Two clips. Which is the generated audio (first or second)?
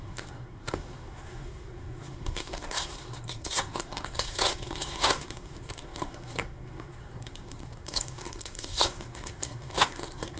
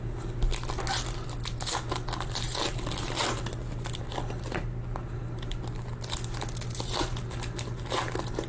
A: first